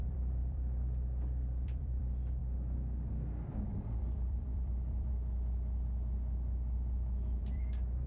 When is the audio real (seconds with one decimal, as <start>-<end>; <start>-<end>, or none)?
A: 2.0-3.5; 5.1-7.4